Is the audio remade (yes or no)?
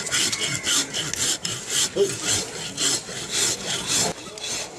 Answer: no